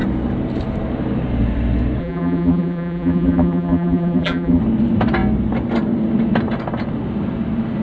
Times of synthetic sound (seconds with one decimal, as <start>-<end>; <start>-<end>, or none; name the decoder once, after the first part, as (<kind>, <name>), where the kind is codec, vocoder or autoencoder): 2.0-4.6 (vocoder, BigVGAN v2)